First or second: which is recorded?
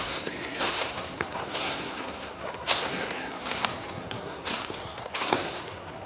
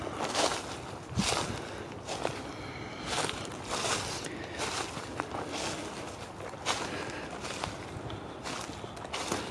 second